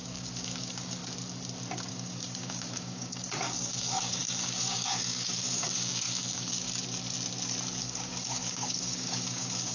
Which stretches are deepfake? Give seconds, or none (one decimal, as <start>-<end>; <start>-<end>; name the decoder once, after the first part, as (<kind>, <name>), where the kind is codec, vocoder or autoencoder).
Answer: 0.0-1.0 (codec, DAC); 1.9-6.7; 7.8-9.7